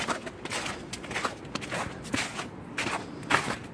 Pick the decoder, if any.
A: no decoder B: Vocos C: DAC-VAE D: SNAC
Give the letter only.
A